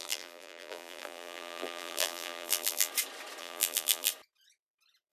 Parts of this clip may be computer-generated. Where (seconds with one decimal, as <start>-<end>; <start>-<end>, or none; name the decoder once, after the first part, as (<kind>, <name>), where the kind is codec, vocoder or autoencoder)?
0.0-2.9 (vocoder, BigVGAN v2); 3.4-4.1